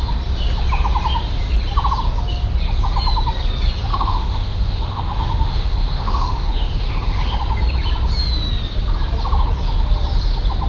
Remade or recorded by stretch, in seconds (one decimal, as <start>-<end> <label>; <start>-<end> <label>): 0.0-3.9 recorded; 3.9-7.4 remade; 7.4-10.7 recorded